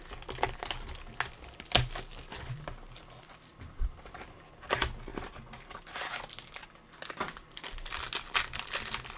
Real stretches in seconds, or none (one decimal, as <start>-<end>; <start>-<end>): 0.0-9.2